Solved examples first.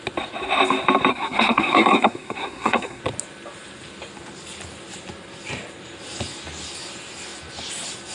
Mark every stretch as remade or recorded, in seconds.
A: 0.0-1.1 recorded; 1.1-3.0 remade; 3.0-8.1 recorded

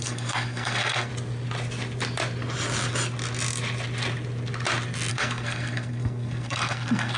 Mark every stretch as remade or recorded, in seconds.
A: 0.0-1.1 remade; 1.1-5.1 recorded; 5.1-7.2 remade

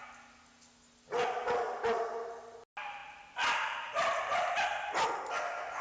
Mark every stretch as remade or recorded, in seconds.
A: 0.0-5.8 recorded

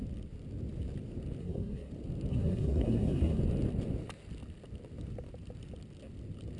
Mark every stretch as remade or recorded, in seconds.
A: 0.0-1.4 recorded; 1.4-1.9 remade; 1.9-2.3 recorded; 2.3-3.4 remade; 3.4-6.6 recorded

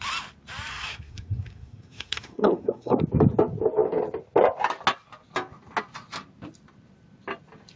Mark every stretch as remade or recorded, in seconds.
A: 0.0-0.7 recorded; 0.7-3.0 remade; 3.0-7.8 recorded

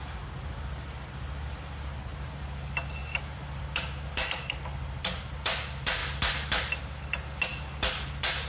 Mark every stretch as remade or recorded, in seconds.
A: 0.0-8.5 recorded

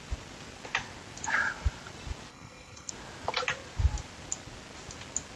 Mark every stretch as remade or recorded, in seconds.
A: 0.0-2.3 recorded; 2.3-2.9 remade; 2.9-5.4 recorded